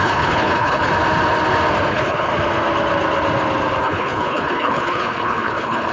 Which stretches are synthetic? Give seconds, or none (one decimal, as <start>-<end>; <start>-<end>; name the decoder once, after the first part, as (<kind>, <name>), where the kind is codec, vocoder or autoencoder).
0.0-0.9 (codec, HILCodec); 1.9-2.3; 3.8-5.9